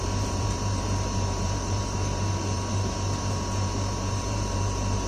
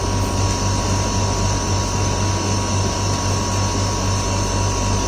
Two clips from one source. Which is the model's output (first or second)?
first